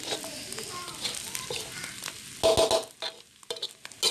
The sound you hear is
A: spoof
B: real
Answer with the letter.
B